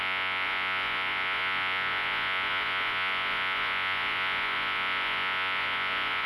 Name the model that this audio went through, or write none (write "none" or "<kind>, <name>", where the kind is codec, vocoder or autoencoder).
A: vocoder, Vocos